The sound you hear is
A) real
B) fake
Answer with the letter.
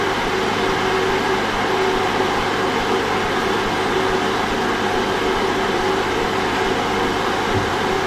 A